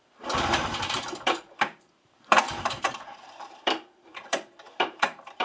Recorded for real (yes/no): no